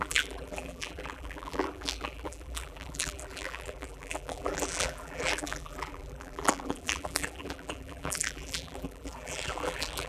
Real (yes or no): no